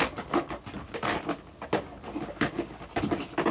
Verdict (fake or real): real